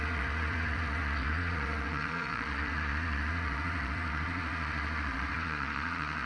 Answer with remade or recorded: remade